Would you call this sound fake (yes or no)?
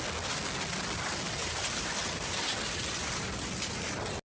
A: no